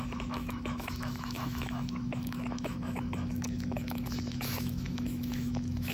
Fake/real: fake